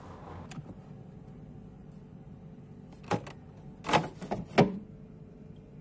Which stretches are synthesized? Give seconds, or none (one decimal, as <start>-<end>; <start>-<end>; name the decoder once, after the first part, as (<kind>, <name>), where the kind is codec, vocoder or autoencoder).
none